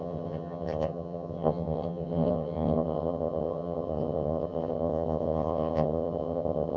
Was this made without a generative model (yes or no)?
no